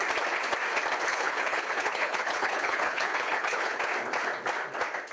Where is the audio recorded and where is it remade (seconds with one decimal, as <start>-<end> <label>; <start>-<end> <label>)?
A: 0.0-1.1 recorded; 1.1-3.8 remade; 3.8-5.1 recorded